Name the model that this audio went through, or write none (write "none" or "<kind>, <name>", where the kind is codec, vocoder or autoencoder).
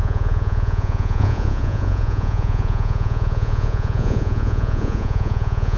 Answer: vocoder, Vocos